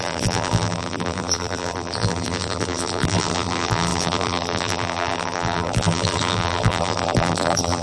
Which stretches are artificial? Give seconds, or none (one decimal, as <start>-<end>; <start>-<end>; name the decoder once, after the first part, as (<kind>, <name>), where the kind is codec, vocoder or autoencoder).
0.0-7.8 (vocoder, BigVGAN v2)